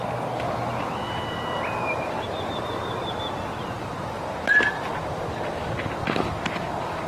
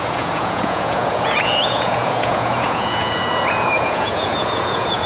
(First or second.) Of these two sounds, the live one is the first